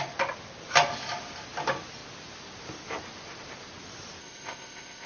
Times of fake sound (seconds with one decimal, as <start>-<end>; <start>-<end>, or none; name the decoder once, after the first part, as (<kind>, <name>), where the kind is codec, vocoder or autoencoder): 4.2-5.1 (codec, ZipCodec)